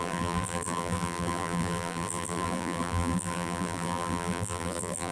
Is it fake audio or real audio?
fake